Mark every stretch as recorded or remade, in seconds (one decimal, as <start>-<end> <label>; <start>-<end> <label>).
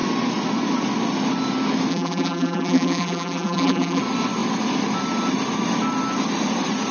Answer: 0.0-1.9 recorded; 1.9-4.0 remade; 4.0-6.9 recorded